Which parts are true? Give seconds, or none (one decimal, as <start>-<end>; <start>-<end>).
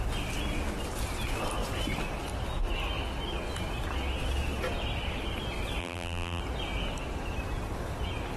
0.0-5.8; 6.4-8.4